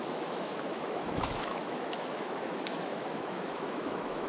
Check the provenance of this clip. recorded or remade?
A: remade